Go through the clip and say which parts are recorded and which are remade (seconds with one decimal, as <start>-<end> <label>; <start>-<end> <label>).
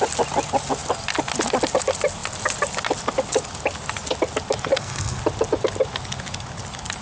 0.0-4.7 recorded; 4.7-5.2 remade; 5.2-7.0 recorded